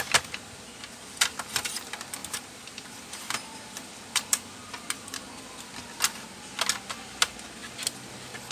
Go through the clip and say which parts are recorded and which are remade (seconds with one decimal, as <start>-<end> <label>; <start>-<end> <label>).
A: 0.0-2.2 recorded; 2.2-5.3 remade; 5.3-8.5 recorded